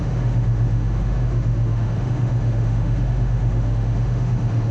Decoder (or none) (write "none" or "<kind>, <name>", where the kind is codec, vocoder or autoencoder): autoencoder, DAC-VAE